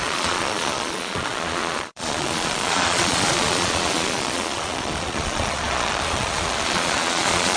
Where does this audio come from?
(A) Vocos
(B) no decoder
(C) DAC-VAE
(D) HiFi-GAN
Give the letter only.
A